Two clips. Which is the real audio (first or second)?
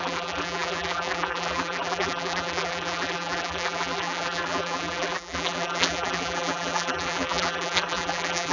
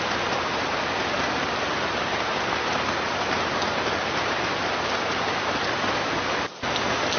second